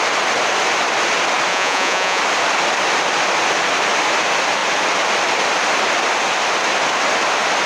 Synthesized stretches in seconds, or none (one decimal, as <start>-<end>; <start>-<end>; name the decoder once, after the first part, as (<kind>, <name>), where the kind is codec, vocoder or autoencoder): 1.5-2.2 (vocoder, Vocos)